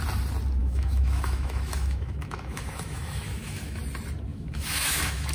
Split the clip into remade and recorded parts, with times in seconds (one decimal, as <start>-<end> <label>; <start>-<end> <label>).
0.0-0.6 recorded; 0.6-3.8 remade; 3.8-4.3 recorded; 4.3-5.3 remade

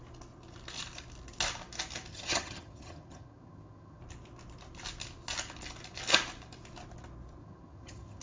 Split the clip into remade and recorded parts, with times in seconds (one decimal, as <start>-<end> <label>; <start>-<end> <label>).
0.0-2.1 recorded; 2.1-4.0 remade; 4.0-7.4 recorded; 7.4-8.2 remade

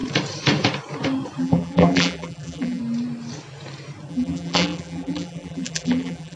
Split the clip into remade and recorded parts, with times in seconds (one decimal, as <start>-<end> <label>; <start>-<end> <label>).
0.0-1.4 recorded; 1.4-2.8 remade; 2.8-4.1 recorded; 4.1-6.4 remade

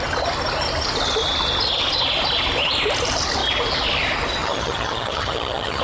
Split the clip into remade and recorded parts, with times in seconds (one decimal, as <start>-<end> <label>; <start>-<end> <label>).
0.0-4.4 recorded; 4.4-5.8 remade

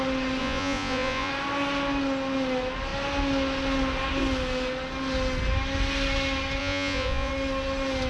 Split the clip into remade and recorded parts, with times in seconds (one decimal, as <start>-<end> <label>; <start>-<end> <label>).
0.0-0.4 recorded; 0.4-1.3 remade; 1.3-6.6 recorded; 6.6-7.3 remade; 7.3-8.1 recorded

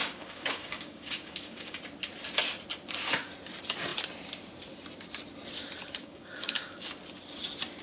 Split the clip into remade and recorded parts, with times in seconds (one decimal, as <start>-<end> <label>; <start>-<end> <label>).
0.0-1.8 remade; 1.8-6.0 recorded; 6.0-6.9 remade; 6.9-7.8 recorded

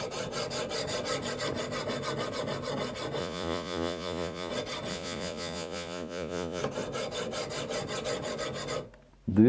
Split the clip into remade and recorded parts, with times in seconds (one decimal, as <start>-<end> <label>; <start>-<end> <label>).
0.0-3.2 recorded; 3.2-4.5 remade; 4.5-4.9 recorded; 4.9-6.6 remade; 6.6-9.5 recorded

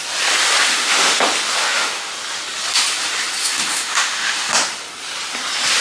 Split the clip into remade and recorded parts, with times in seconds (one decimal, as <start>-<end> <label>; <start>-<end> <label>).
0.0-0.7 recorded; 0.7-1.2 remade; 1.2-1.6 recorded; 1.6-2.1 remade; 2.1-3.4 recorded; 3.4-4.5 remade; 4.5-5.8 recorded